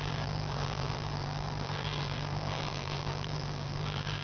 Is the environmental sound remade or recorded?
remade